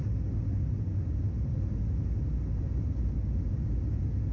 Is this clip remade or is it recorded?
recorded